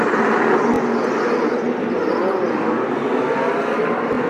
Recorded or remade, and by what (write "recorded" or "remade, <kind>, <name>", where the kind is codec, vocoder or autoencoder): recorded